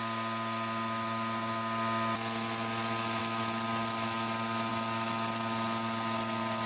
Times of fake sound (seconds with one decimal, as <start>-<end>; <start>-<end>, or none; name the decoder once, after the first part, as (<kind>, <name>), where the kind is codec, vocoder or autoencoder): none